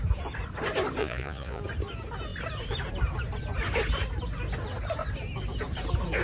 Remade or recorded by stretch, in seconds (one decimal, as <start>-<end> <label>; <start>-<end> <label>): 0.0-1.0 recorded; 1.0-1.6 remade; 1.6-6.2 recorded